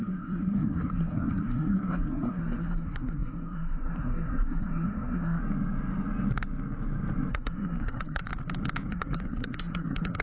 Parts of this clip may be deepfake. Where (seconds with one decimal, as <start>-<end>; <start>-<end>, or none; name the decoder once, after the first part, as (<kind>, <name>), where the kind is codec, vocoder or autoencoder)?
0.0-5.4 (codec, SNAC); 7.3-8.3; 8.9-10.2